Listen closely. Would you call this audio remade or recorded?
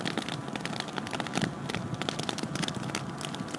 recorded